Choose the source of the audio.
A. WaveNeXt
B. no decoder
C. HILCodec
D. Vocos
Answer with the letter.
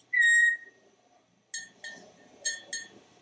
B